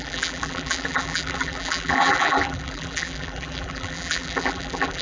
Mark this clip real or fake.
fake